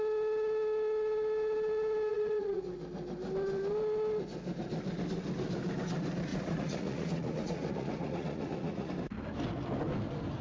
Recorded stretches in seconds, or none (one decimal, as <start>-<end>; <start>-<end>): 0.0-2.1; 2.6-6.3; 8.9-10.4